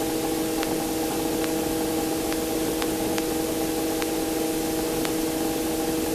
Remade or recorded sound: recorded